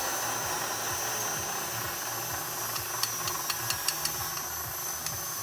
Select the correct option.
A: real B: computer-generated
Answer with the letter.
A